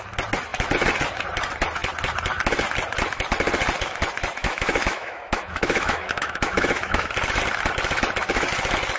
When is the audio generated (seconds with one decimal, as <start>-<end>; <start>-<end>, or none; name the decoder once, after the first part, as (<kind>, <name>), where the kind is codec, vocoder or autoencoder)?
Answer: 4.4-7.1 (autoencoder, DAC-VAE)